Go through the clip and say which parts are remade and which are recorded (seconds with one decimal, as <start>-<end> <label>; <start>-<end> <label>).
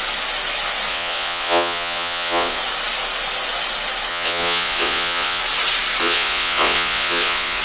0.0-0.9 recorded; 0.9-2.6 remade; 2.6-4.1 recorded; 4.1-5.4 remade; 5.4-6.0 recorded; 6.0-7.6 remade